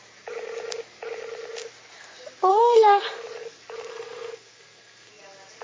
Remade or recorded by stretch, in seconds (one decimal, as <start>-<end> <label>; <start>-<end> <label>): 0.0-2.5 recorded; 2.5-3.2 remade; 3.2-3.9 recorded; 3.9-5.1 remade; 5.1-5.6 recorded